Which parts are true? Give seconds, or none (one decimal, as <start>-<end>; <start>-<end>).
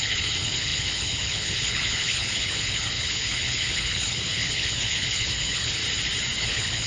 5.8-6.4